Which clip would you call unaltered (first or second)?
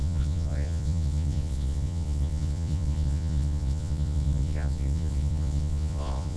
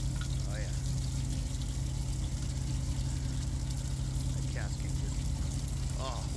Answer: second